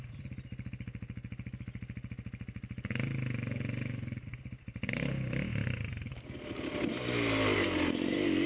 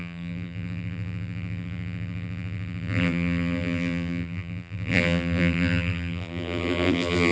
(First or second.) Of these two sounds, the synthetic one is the second